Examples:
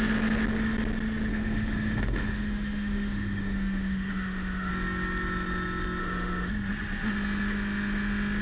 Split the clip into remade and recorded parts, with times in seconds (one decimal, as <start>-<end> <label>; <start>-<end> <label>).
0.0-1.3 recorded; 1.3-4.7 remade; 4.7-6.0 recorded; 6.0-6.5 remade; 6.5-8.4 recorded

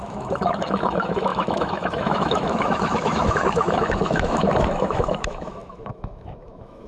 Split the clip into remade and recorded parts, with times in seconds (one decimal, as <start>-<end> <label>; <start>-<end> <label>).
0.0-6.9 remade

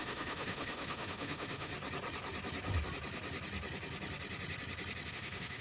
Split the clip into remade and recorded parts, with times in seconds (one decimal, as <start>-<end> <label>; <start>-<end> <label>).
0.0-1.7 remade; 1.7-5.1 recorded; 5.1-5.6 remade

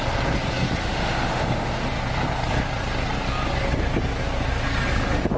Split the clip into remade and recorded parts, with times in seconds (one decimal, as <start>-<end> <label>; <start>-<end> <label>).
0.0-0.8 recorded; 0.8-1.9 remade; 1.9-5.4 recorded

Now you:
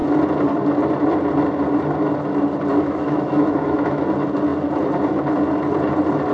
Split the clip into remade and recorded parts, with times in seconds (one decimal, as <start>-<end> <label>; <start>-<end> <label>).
0.0-2.7 recorded; 2.7-4.0 remade; 4.0-6.3 recorded

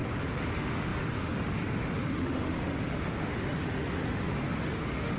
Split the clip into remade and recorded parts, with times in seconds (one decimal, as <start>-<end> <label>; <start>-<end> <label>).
0.0-0.5 recorded; 0.5-5.2 remade

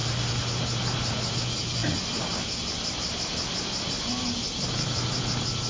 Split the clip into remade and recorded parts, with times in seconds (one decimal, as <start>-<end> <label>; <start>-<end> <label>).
0.0-5.7 recorded

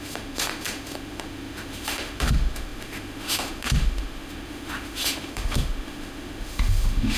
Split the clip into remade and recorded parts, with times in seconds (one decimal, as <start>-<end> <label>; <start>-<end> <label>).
0.0-7.2 remade